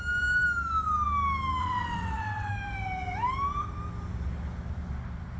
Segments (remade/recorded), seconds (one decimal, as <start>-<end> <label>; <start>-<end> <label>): 0.0-1.6 recorded; 1.6-2.5 remade; 2.5-5.4 recorded